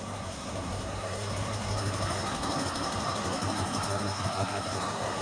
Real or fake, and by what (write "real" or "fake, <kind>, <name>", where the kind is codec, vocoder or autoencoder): fake, codec, SNAC